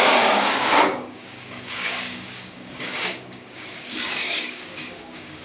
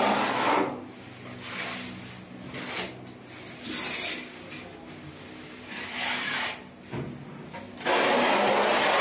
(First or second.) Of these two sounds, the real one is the second